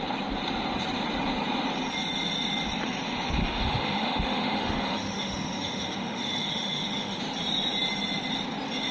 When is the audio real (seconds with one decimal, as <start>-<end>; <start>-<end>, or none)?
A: 0.0-3.4; 7.2-8.9